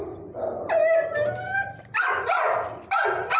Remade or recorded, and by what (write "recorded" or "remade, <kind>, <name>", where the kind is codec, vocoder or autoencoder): recorded